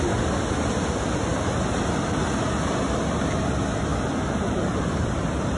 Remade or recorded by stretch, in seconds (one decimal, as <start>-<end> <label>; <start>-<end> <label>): 0.0-3.9 recorded; 3.9-5.1 remade; 5.1-5.6 recorded